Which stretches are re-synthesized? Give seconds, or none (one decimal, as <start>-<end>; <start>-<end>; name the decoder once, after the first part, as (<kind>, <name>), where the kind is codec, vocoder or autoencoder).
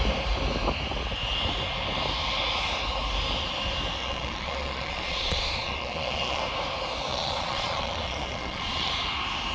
4.0-6.4 (vocoder, Vocos); 7.1-8.9